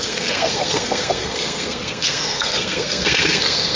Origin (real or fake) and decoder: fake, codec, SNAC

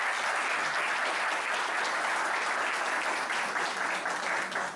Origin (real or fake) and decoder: real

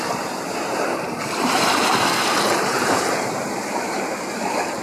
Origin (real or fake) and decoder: fake, vocoder, BigVGAN v2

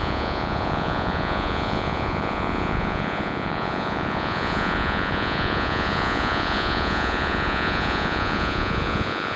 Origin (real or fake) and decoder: fake, vocoder, Vocos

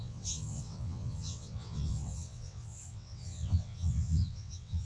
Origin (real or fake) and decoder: fake, vocoder, WaveNeXt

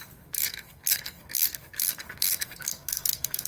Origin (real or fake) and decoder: fake, codec, SNAC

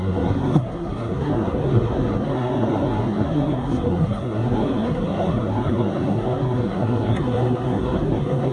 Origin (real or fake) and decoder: fake, codec, SNAC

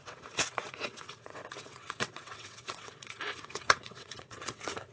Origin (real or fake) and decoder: fake, vocoder, WaveNeXt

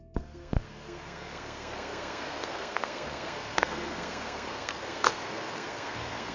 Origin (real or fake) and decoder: fake, codec, SNAC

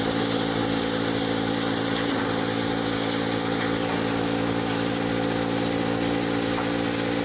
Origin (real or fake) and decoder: real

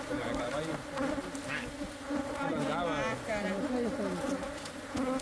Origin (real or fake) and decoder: real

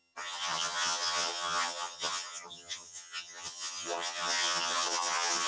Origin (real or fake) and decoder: fake, vocoder, HiFi-GAN